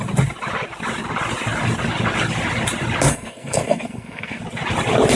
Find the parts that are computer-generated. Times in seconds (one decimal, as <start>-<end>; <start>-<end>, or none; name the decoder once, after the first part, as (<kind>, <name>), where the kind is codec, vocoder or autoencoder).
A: 3.1-4.4 (codec, SNAC)